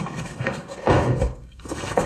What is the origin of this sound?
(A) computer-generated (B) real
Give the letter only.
A